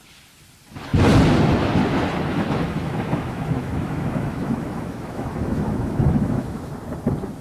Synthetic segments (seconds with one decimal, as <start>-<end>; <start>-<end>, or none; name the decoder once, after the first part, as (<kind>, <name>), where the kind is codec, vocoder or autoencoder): 2.3-6.7 (autoencoder, DAC-VAE)